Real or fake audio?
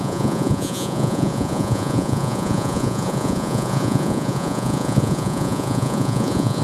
fake